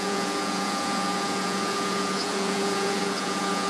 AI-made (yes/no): yes